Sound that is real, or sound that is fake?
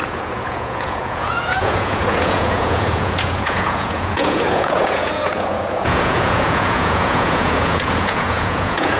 fake